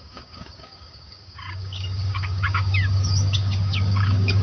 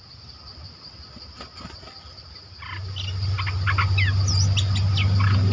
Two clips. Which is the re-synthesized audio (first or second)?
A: first